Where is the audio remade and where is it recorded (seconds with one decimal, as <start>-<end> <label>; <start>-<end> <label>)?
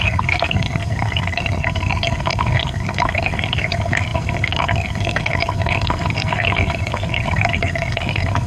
0.0-8.5 remade